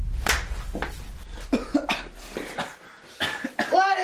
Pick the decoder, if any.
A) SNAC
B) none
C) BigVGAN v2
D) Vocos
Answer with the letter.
B